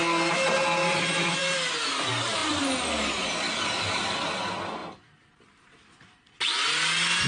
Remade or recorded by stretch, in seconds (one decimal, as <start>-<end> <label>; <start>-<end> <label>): 0.0-7.3 recorded